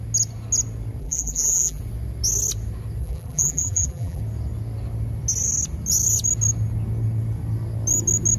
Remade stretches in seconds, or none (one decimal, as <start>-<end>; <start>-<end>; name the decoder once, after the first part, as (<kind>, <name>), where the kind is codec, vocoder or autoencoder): 1.0-1.8 (vocoder, BigVGAN v2); 3.0-4.2